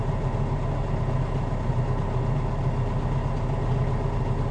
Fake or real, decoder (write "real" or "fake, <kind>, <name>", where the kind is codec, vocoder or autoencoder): real